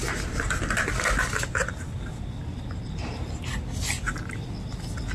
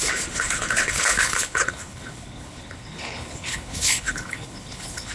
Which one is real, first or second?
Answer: first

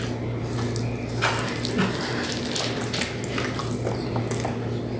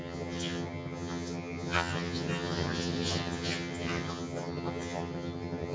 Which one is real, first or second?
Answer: first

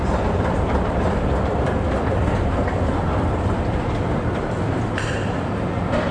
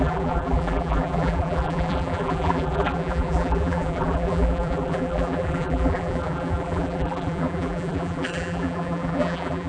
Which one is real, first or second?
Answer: first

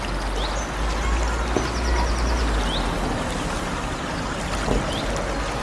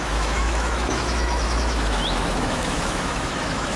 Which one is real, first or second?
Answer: first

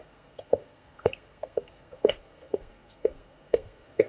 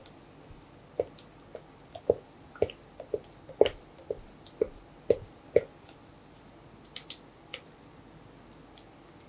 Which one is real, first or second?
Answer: second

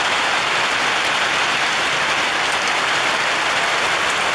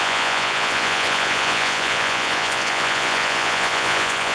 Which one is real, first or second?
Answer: first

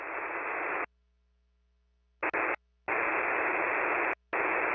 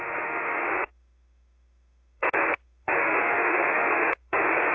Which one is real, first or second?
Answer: first